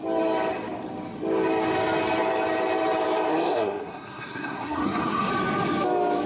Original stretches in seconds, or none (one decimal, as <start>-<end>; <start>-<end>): 0.0-3.3; 5.3-6.3